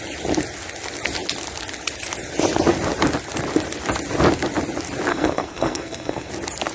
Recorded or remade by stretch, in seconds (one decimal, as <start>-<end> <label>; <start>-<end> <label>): 0.0-5.1 recorded; 5.1-6.3 remade; 6.3-6.7 recorded